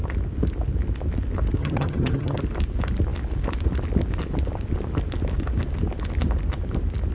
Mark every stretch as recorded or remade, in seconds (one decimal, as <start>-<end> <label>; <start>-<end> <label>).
0.0-1.6 recorded; 1.6-2.4 remade; 2.4-7.1 recorded